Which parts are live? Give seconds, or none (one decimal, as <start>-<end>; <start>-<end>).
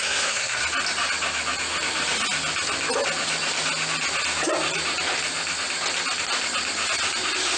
0.6-7.6